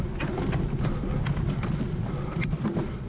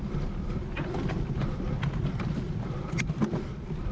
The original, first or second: first